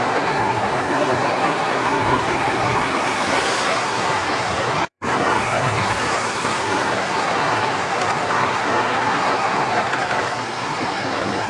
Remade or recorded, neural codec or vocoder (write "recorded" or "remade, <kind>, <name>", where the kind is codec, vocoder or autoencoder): remade, codec, SNAC